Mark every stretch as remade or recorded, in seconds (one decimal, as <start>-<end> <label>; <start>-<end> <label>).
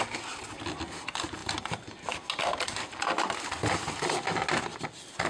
0.0-5.3 recorded